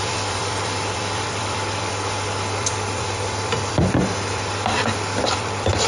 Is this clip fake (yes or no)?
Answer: yes